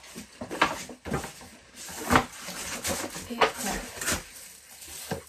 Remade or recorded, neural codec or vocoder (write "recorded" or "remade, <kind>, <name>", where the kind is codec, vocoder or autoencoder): recorded